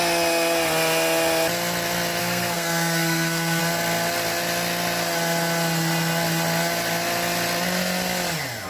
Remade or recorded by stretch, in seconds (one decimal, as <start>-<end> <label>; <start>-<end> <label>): 0.0-2.2 recorded; 2.2-3.6 remade; 3.6-8.7 recorded